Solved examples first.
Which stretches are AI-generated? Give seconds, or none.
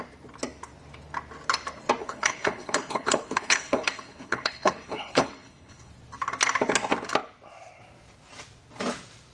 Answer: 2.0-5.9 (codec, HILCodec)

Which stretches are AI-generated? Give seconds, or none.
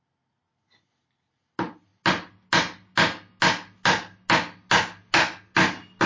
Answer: none